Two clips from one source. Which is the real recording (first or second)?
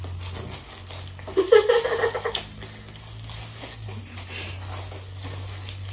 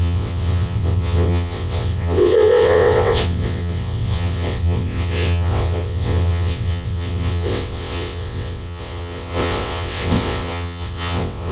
first